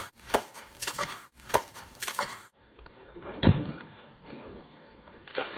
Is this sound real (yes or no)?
no